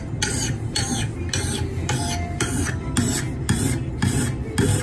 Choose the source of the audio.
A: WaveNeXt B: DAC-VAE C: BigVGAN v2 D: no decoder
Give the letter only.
D